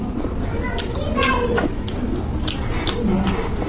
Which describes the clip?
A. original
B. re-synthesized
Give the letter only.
A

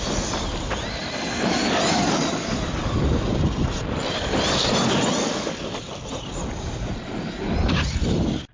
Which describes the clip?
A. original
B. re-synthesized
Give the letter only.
A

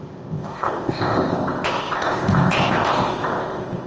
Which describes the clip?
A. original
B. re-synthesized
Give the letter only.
B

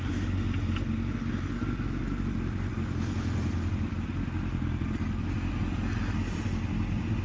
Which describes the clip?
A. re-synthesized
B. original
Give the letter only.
B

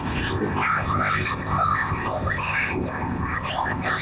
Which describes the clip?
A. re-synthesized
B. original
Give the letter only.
A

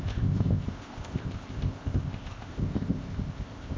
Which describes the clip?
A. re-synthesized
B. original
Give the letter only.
A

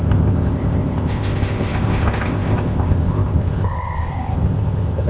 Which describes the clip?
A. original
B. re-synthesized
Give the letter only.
B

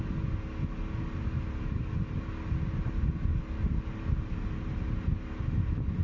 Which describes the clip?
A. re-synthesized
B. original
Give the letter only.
B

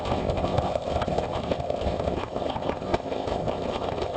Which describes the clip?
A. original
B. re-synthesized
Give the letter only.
B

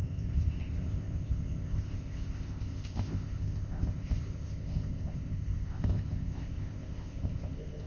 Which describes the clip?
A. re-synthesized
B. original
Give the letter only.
A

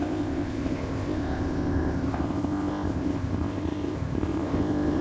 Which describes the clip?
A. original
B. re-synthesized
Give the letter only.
B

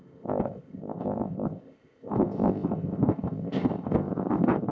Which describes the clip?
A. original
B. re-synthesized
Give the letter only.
B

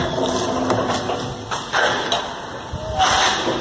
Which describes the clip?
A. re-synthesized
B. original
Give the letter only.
B